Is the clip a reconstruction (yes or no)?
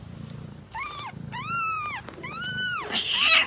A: yes